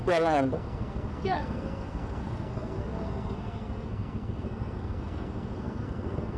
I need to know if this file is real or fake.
fake